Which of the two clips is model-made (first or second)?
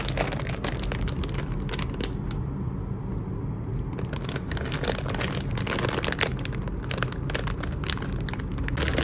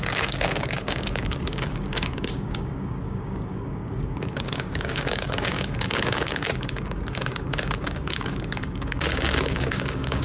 second